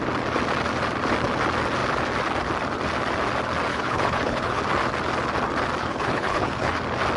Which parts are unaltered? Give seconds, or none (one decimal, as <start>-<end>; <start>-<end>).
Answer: 0.0-3.7; 4.6-5.8; 6.8-7.2